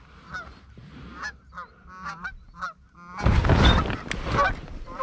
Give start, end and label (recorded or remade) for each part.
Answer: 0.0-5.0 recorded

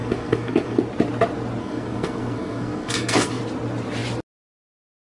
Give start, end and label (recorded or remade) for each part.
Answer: 0.0-0.8 remade; 0.8-1.6 recorded; 1.6-3.4 remade; 3.4-5.0 recorded